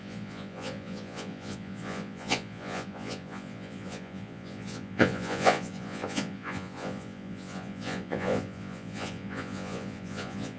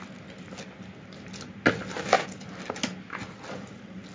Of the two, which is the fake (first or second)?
first